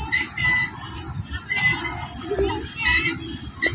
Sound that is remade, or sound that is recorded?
recorded